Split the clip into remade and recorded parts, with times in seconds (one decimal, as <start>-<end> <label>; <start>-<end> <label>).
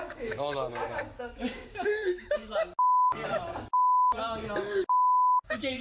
0.0-2.4 remade; 2.4-3.1 recorded; 3.1-5.8 remade